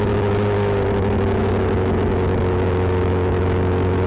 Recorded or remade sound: remade